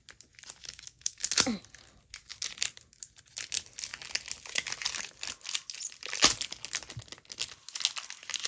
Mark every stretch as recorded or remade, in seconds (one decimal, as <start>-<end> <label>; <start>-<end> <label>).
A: 0.0-0.6 recorded; 0.6-1.3 remade; 1.3-8.5 recorded